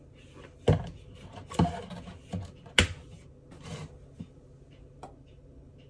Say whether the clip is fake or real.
real